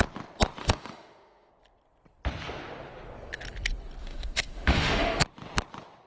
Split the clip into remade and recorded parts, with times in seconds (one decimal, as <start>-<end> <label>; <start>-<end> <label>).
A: 0.0-0.6 recorded; 0.6-1.5 remade; 1.5-4.0 recorded; 4.0-5.2 remade; 5.2-6.1 recorded